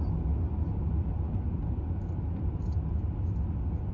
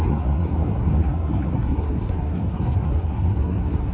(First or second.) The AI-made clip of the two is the second